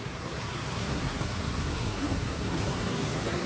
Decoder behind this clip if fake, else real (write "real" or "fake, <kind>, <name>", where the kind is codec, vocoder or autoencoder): fake, codec, SNAC